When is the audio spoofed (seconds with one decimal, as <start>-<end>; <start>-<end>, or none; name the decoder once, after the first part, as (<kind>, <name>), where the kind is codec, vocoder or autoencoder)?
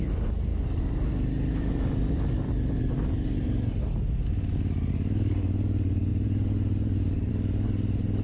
6.1-7.3 (vocoder, BigVGAN v2)